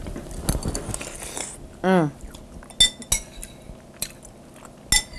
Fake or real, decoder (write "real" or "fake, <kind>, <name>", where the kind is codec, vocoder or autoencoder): real